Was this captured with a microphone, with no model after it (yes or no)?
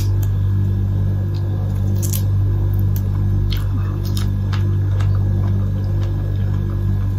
yes